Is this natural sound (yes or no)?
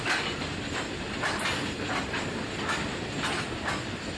yes